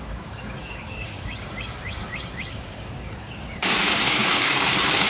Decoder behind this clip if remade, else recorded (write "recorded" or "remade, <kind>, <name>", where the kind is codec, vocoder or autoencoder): remade, codec, DAC